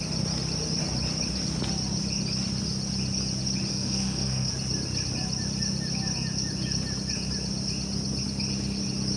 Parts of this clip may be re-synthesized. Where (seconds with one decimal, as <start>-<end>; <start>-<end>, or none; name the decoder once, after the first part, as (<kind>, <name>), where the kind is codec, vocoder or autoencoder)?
3.7-4.5 (codec, SNAC)